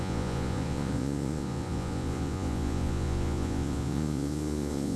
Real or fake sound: fake